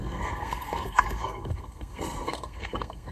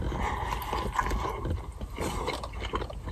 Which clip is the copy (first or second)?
first